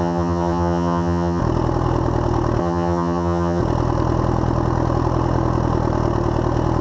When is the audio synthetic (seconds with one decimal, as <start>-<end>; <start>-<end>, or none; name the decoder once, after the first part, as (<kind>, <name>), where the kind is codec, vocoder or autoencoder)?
0.0-1.4 (vocoder, HiFi-GAN); 2.6-3.6